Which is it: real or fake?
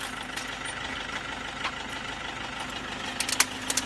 real